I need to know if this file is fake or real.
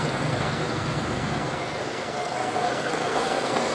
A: fake